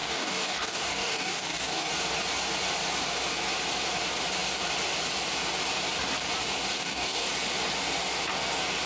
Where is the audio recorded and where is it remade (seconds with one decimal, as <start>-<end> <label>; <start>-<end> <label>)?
0.0-1.9 remade; 1.9-6.7 recorded; 6.7-7.3 remade; 7.3-8.9 recorded